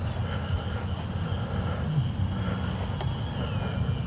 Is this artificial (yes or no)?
no